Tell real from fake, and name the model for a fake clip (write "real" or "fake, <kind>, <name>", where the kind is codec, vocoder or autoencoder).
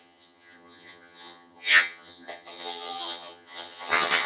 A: fake, vocoder, HiFi-GAN